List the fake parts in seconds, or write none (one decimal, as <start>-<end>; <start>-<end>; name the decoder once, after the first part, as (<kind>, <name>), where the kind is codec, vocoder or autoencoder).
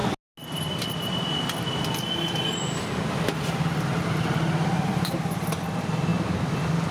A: 4.9-5.5 (vocoder, BigVGAN v2)